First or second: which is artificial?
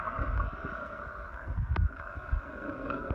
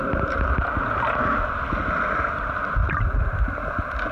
first